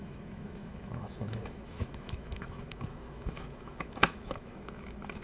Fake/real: fake